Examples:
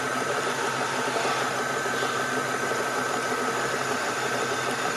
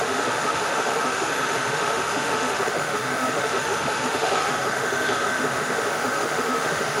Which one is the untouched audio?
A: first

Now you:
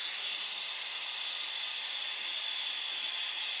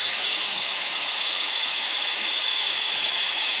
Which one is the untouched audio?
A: first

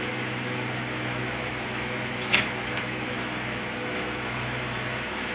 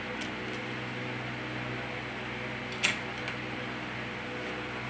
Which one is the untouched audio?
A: second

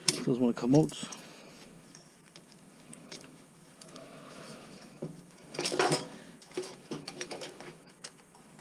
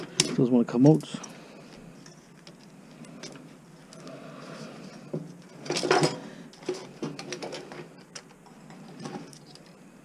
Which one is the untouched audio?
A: second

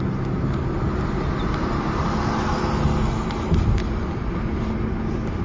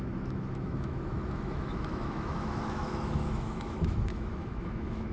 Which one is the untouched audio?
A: first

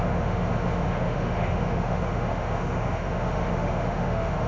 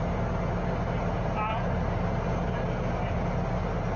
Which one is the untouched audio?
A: second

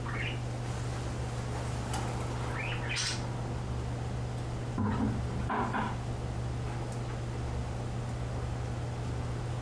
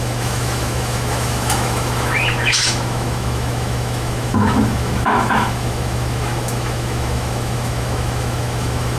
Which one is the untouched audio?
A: first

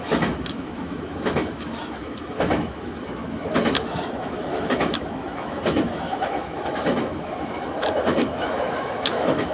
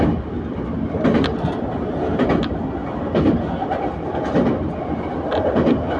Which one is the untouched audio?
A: second